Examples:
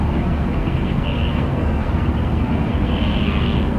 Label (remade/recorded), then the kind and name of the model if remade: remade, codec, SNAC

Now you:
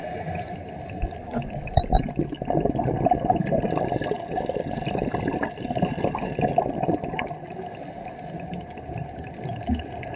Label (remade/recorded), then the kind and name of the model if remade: recorded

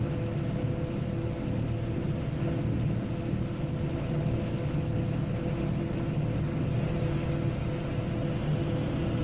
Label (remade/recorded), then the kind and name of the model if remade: recorded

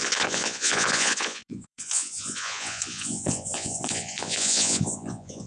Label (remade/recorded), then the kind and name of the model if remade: remade, vocoder, Vocos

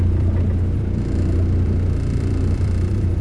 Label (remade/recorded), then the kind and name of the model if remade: remade, vocoder, BigVGAN v2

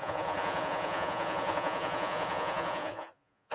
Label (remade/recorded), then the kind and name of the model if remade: remade, vocoder, Vocos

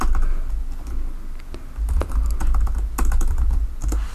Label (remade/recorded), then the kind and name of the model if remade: recorded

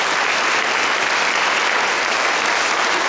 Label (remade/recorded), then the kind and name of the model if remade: recorded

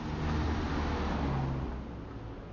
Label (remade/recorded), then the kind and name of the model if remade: recorded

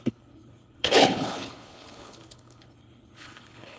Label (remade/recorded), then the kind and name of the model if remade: remade, codec, HILCodec